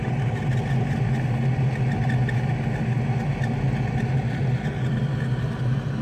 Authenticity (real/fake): real